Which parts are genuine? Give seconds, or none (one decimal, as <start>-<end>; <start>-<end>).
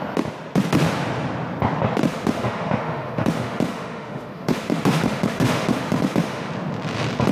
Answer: 0.0-2.1; 6.5-7.3